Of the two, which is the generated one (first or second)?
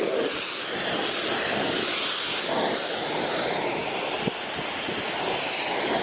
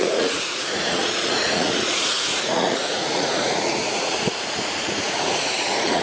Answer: second